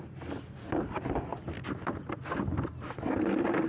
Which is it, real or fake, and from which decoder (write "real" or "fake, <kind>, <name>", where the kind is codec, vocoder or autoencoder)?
real